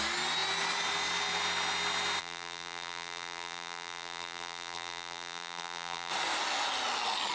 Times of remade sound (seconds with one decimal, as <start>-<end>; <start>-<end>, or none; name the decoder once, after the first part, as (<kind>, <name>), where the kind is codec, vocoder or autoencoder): 2.2-6.1 (vocoder, BigVGAN v2)